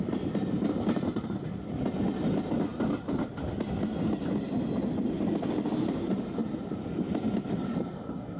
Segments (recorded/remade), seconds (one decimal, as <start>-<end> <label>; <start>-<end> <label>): 0.0-6.4 recorded; 6.4-7.3 remade; 7.3-8.4 recorded